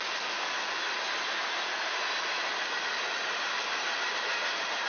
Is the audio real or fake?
real